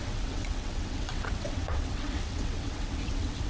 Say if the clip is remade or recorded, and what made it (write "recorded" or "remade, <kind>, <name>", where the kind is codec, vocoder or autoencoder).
remade, vocoder, WaveNeXt